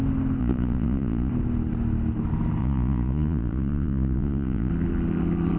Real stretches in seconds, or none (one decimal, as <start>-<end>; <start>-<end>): 0.0-0.4; 1.3-2.6; 4.7-5.6